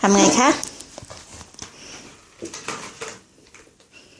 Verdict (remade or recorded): recorded